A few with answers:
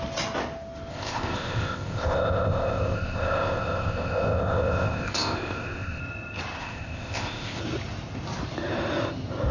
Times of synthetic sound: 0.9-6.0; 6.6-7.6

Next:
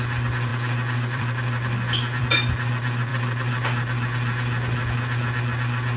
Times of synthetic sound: 0.5-2.2; 3.1-4.9

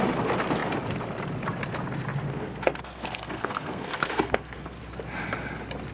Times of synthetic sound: 2.3-4.8

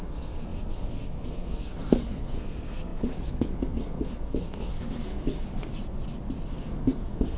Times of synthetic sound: 0.0-5.7; 6.5-7.4